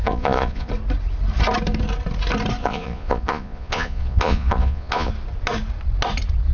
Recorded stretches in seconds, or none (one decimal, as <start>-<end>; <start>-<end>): 0.7-2.6; 5.1-6.5